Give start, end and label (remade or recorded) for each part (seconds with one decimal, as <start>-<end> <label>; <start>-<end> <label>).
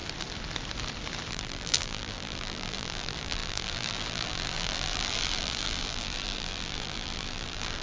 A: 0.0-1.3 recorded; 1.3-7.8 remade